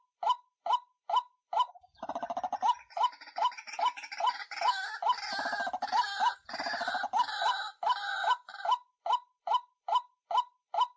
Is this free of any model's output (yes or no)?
yes